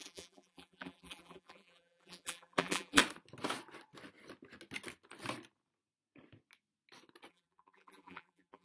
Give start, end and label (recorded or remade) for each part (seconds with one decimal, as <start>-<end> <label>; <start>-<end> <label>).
0.0-3.0 remade; 3.0-7.3 recorded; 7.3-8.6 remade